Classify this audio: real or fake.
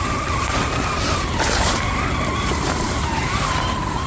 fake